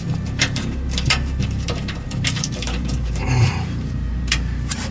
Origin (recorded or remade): remade